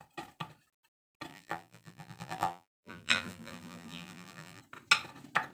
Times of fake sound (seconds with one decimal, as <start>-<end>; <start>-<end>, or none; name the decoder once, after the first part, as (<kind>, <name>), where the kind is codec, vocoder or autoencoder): 1.3-4.6 (vocoder, BigVGAN v2)